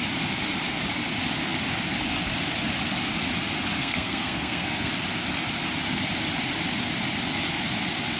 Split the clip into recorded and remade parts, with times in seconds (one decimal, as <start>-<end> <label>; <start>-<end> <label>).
0.0-3.8 recorded; 3.8-4.9 remade; 4.9-8.2 recorded